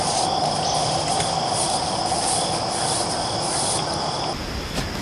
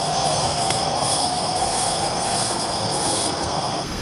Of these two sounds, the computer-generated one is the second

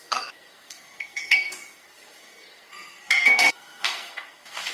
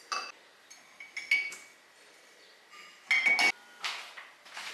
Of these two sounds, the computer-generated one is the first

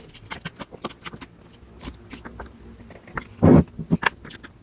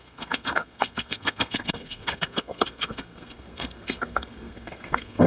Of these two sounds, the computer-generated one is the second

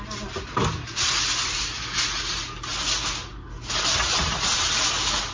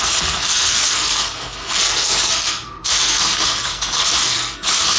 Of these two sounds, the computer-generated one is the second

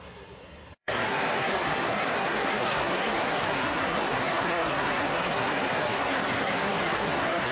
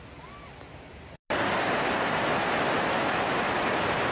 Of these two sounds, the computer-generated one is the first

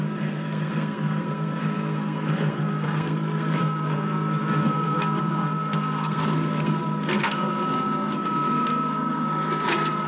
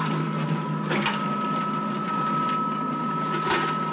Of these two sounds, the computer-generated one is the first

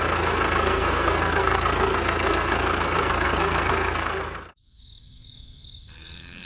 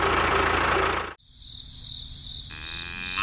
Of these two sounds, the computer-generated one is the first